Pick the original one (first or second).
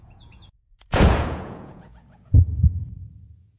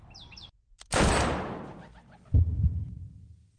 second